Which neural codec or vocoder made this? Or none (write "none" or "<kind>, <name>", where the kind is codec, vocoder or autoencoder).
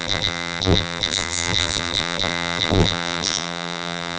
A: vocoder, BigVGAN v2